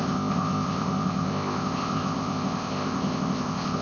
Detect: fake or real fake